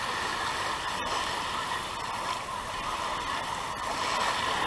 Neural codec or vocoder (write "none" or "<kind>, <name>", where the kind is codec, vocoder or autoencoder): none